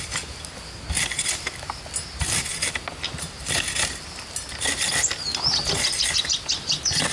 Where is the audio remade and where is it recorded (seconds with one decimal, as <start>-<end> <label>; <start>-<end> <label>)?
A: 0.0-7.1 recorded